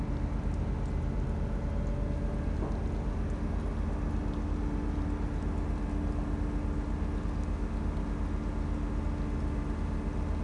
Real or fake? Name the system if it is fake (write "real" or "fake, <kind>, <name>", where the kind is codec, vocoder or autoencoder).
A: real